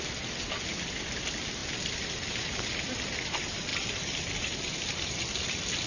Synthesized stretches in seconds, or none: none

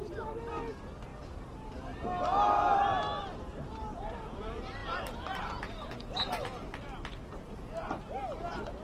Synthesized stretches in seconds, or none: 4.8-6.3 (vocoder, BigVGAN v2)

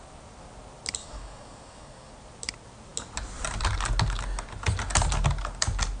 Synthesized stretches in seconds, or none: 1.0-2.1 (codec, DAC)